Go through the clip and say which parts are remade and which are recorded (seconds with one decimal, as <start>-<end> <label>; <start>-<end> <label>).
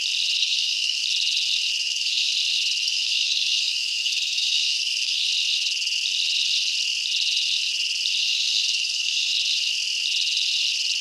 0.0-0.4 recorded; 0.4-1.0 remade; 1.0-1.8 recorded; 1.8-2.3 remade; 2.3-2.8 recorded; 2.8-5.3 remade; 5.3-8.2 recorded; 8.2-9.3 remade; 9.3-11.0 recorded